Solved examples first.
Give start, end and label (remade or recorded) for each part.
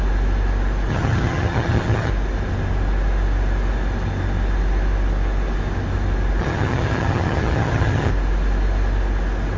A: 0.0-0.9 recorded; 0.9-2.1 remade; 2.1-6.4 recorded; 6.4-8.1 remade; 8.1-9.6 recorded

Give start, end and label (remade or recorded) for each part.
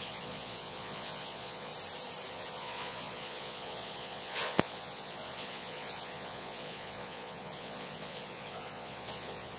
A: 0.0-1.7 remade; 1.7-2.3 recorded; 2.3-9.6 remade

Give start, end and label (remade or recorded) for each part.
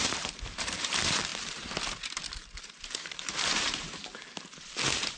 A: 0.0-1.3 remade; 1.3-2.6 recorded; 2.6-5.2 remade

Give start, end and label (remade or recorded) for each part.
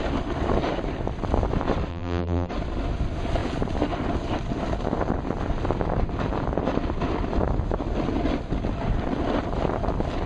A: 0.0-1.9 recorded; 1.9-2.5 remade; 2.5-10.3 recorded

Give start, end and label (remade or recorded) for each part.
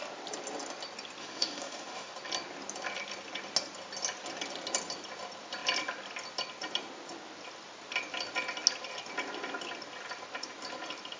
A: 0.0-1.2 recorded; 1.2-2.1 remade; 2.1-11.2 recorded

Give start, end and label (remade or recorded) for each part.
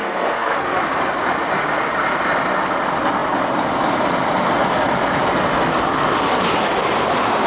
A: 0.0-0.8 remade; 0.8-7.5 recorded